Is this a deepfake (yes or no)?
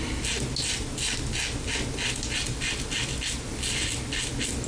no